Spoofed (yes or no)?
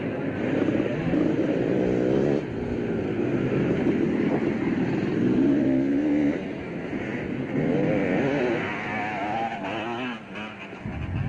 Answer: no